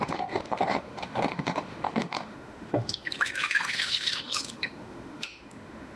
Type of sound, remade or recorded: remade